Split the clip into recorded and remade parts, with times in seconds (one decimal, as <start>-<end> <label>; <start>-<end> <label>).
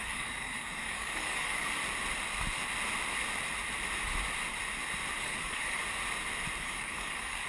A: 0.0-1.8 remade; 1.8-5.2 recorded; 5.2-5.8 remade; 5.8-6.6 recorded; 6.6-7.5 remade